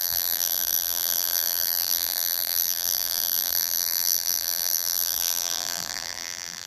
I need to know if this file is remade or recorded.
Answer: remade